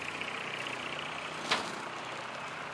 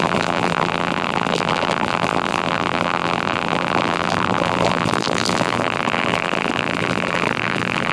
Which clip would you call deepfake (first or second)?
second